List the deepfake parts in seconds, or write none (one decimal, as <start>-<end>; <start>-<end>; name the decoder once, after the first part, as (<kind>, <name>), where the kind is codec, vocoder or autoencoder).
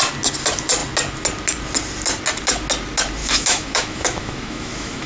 3.2-5.1 (autoencoder, DAC-VAE)